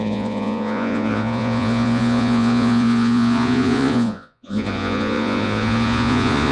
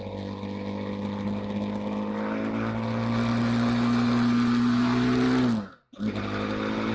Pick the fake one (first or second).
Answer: first